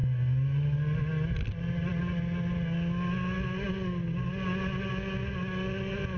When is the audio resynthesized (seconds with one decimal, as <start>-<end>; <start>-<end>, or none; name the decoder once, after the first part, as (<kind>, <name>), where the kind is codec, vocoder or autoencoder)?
none

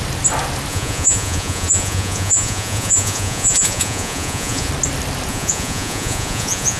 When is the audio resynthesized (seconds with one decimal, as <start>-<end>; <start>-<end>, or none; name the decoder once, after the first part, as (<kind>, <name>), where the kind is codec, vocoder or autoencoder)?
0.7-4.7 (vocoder, Vocos); 5.3-6.8

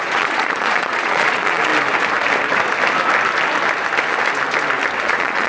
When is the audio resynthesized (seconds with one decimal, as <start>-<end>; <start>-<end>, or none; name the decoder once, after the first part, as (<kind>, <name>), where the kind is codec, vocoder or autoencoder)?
0.0-1.7 (vocoder, Vocos); 5.0-5.5

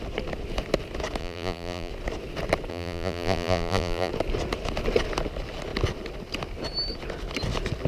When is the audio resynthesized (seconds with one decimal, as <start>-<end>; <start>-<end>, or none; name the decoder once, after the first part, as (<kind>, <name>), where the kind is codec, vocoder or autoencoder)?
1.2-1.9 (vocoder, BigVGAN v2); 2.7-4.1

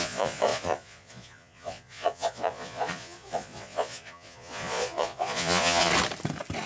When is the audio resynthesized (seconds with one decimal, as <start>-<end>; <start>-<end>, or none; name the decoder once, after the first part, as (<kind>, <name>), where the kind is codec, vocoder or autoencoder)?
0.0-5.9 (vocoder, Vocos)